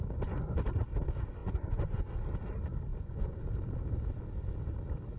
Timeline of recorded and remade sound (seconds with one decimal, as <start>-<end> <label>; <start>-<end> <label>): 0.0-1.4 recorded; 1.4-2.1 remade; 2.1-2.9 recorded; 2.9-3.4 remade; 3.4-5.2 recorded